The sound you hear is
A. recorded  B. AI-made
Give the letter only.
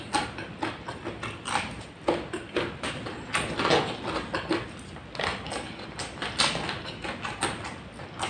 A